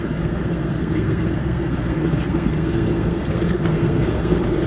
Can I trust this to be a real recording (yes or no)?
no